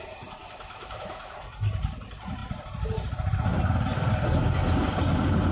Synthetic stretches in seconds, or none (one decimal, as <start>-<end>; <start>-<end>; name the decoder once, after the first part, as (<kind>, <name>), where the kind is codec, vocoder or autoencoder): 0.4-1.3 (autoencoder, DAC-VAE)